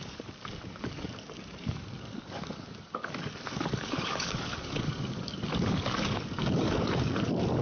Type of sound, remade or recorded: remade